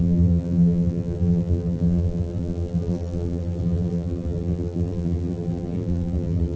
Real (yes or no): no